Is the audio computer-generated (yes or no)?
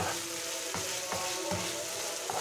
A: no